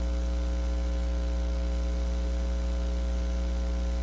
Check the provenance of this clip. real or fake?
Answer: real